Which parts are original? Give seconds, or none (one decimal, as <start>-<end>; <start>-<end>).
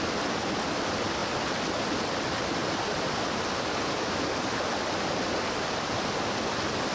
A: 0.0-6.9